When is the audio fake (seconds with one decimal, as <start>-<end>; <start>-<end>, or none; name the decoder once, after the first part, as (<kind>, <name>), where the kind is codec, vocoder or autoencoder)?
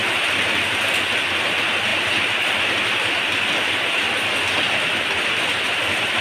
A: none